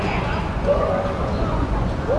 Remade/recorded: remade